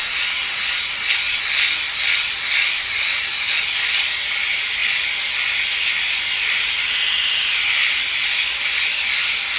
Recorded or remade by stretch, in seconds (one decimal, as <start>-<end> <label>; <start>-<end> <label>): 0.0-9.6 recorded